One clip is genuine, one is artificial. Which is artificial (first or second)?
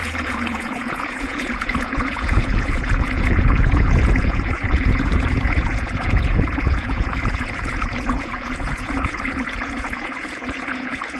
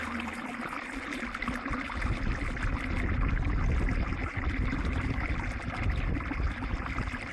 first